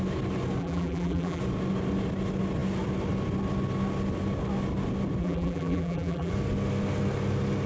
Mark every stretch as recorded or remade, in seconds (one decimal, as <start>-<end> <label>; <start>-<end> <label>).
0.0-0.6 recorded; 0.6-1.4 remade; 1.4-5.2 recorded; 5.2-6.3 remade; 6.3-7.7 recorded